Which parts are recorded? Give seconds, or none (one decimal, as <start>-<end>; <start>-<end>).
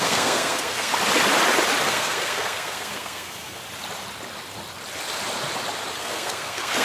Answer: 0.9-1.8; 3.6-5.9